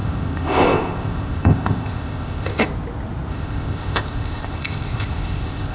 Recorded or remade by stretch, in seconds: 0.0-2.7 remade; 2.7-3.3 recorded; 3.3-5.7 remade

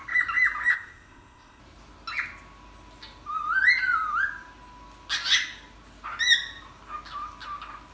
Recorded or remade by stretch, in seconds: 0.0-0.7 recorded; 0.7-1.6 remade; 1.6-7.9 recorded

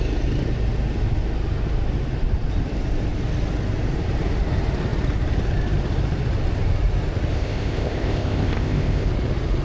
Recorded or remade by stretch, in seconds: 0.0-7.3 recorded; 7.3-9.1 remade; 9.1-9.6 recorded